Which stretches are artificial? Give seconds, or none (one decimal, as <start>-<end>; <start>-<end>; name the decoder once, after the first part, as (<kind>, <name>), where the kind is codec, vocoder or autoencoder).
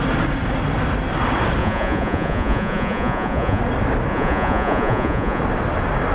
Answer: 1.6-3.6 (vocoder, Vocos); 4.1-5.4